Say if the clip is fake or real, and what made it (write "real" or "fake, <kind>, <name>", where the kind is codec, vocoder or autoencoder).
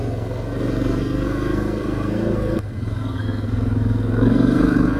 fake, codec, SNAC